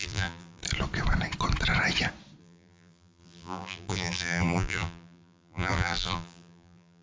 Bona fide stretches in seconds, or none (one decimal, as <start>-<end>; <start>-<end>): 0.6-2.4

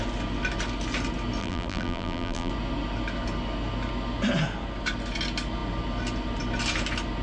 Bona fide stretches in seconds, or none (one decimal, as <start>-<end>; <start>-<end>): 0.0-1.4; 2.5-7.2

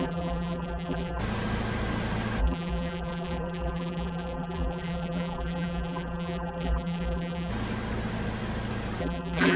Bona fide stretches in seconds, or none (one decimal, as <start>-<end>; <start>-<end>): 1.2-2.4; 7.5-9.0

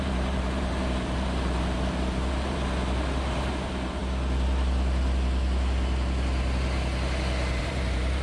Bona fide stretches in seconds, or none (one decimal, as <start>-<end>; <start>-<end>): 4.0-7.6

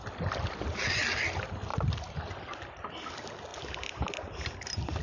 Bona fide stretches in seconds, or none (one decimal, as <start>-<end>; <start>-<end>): 0.0-5.0

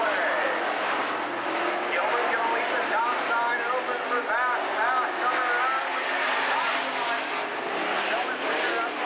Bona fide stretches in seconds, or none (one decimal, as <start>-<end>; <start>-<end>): 0.0-2.2; 3.0-9.1

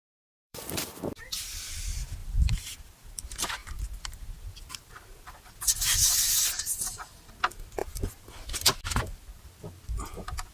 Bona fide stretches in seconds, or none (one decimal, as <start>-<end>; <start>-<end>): 1.6-2.2; 2.7-10.5

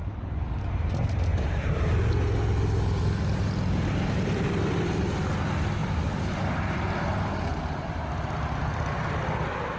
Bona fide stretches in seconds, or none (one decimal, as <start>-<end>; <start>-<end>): 0.0-1.3; 2.1-7.5; 8.1-9.8